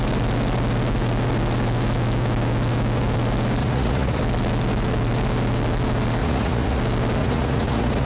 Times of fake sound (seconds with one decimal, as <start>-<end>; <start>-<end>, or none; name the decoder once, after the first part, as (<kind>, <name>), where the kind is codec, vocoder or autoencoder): 3.6-4.2 (vocoder, Vocos); 6.2-6.8; 7.2-8.1